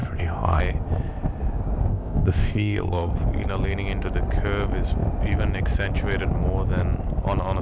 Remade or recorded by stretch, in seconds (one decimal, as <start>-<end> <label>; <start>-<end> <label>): 0.0-0.6 remade; 0.6-1.9 recorded; 1.9-3.1 remade; 3.1-7.6 recorded